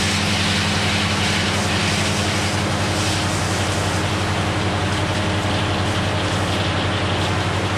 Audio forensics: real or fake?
real